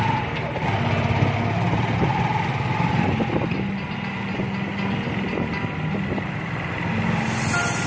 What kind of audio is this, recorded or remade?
recorded